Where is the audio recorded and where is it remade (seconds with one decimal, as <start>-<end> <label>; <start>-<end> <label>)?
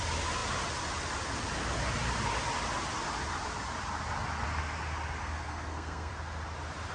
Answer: 0.0-5.2 recorded; 5.2-6.1 remade; 6.1-6.9 recorded